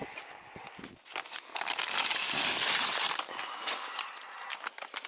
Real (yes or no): yes